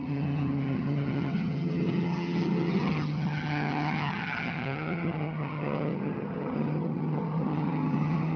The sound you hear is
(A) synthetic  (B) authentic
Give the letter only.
A